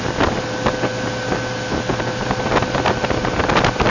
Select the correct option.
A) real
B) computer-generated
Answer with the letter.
A